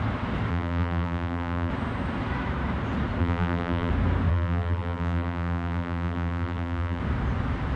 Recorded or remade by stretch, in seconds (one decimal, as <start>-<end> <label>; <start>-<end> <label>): 0.0-0.5 recorded; 0.5-1.7 remade; 1.7-3.2 recorded; 3.2-3.9 remade; 3.9-4.3 recorded; 4.3-7.0 remade; 7.0-7.8 recorded